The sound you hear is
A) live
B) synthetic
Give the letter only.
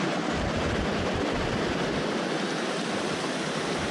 A